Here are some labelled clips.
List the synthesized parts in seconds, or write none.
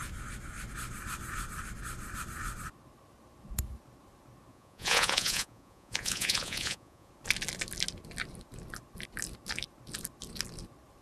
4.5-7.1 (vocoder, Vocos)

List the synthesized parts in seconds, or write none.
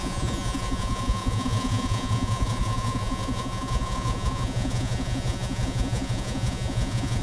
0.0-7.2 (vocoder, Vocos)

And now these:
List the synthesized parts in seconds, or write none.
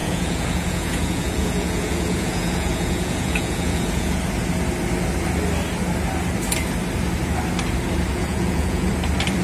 0.0-4.2 (vocoder, Vocos); 8.1-8.9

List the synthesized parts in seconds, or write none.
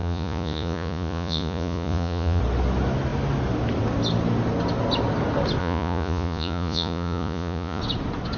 0.0-2.4 (vocoder, Vocos); 5.6-7.8